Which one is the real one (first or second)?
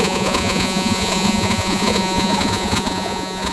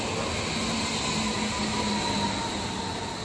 second